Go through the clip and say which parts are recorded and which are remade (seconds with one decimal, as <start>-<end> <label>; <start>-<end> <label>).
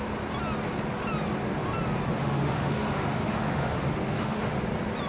0.0-2.2 recorded; 2.2-4.6 remade; 4.6-5.1 recorded